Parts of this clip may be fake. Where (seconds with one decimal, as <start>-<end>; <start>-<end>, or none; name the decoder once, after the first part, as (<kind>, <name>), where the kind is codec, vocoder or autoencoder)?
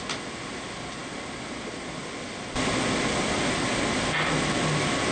none